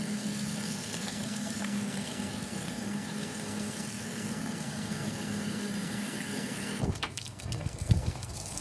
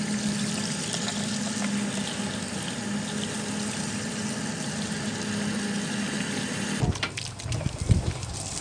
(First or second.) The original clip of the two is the second